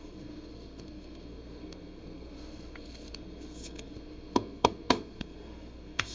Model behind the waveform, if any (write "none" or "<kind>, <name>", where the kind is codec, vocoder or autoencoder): codec, SNAC